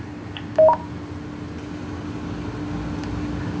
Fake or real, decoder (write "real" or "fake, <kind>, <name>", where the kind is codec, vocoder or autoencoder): real